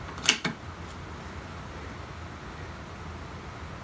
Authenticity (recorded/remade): recorded